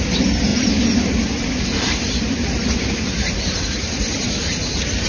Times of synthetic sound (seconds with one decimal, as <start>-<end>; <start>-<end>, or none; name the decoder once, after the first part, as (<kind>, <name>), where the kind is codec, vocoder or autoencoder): none